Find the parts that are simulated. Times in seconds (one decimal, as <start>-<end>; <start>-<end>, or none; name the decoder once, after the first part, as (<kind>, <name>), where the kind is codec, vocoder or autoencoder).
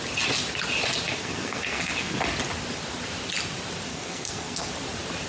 1.2-2.2 (codec, SNAC); 3.9-4.7